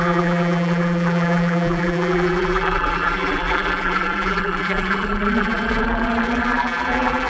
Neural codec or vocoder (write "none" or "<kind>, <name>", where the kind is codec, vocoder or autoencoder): vocoder, BigVGAN v2